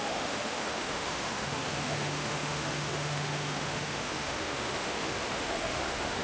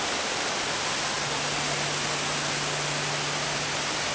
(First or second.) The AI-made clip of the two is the first